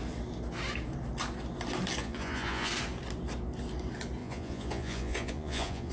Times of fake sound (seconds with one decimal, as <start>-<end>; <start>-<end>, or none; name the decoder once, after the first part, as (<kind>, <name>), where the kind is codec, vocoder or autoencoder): 2.0-2.7 (vocoder, Vocos); 4.2-5.9